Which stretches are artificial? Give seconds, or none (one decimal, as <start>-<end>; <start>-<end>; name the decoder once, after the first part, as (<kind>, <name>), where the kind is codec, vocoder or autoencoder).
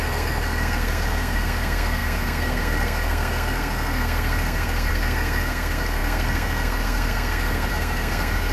0.0-8.5 (codec, SNAC)